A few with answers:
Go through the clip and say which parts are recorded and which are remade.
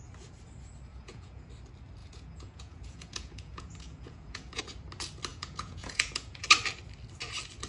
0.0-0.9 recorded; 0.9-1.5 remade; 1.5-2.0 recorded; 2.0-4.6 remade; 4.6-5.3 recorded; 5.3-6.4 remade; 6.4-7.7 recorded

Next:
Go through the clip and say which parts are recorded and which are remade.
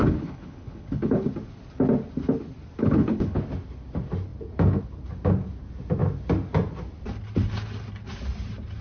0.0-1.3 remade; 1.3-2.8 recorded; 2.8-3.4 remade; 3.4-8.8 recorded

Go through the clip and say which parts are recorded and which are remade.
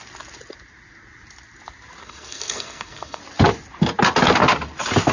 0.0-2.0 recorded; 2.0-3.2 remade; 3.2-5.1 recorded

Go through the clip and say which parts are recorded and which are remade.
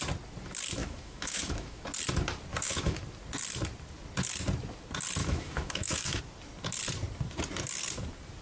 0.0-0.8 recorded; 0.8-1.8 remade; 1.8-2.5 recorded; 2.5-3.0 remade; 3.0-5.2 recorded; 5.2-6.2 remade; 6.2-8.4 recorded